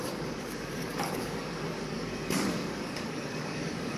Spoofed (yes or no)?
yes